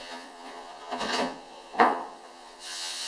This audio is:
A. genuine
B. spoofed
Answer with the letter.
B